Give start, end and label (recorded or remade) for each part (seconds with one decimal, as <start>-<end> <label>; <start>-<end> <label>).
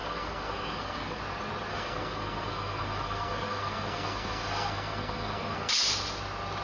0.0-1.2 remade; 1.2-1.7 recorded; 1.7-5.7 remade; 5.7-6.6 recorded